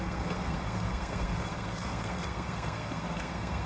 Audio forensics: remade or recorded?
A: remade